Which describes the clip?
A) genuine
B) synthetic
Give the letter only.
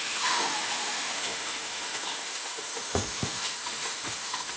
B